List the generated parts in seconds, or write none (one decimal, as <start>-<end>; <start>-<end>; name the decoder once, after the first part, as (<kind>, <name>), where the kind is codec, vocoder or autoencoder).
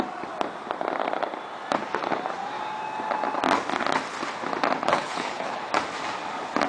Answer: 4.9-5.6 (codec, HILCodec)